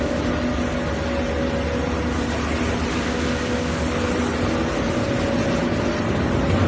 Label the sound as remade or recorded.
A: recorded